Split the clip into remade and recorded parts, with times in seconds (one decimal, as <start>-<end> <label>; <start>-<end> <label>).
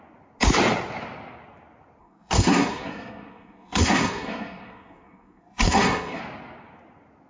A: 0.0-2.0 recorded; 2.0-6.2 remade; 6.2-7.3 recorded